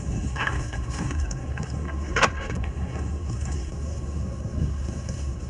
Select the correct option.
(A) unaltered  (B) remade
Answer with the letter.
B